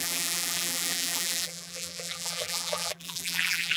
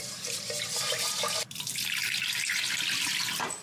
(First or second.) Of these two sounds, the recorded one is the second